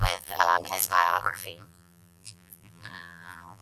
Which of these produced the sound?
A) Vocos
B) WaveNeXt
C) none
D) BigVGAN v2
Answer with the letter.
D